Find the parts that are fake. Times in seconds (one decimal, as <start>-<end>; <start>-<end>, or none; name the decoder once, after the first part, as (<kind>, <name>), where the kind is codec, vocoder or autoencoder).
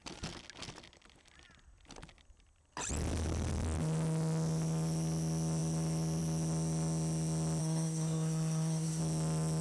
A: 7.6-9.0 (codec, SNAC)